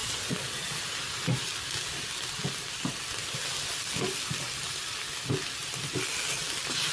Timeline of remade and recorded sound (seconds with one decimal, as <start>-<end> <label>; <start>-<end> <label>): 0.0-0.8 remade; 0.8-6.9 recorded